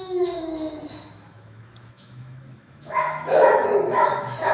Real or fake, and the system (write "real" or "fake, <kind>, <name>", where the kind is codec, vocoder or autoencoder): fake, autoencoder, DAC-VAE